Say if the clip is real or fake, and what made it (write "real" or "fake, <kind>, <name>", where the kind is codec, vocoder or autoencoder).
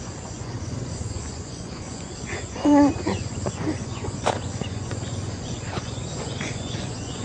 fake, vocoder, Vocos